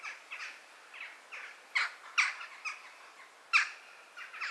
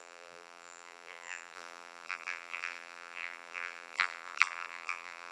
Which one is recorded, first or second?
first